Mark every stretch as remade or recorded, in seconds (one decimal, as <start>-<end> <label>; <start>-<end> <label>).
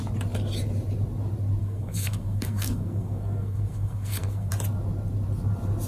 0.0-1.6 recorded; 1.6-4.5 remade; 4.5-5.9 recorded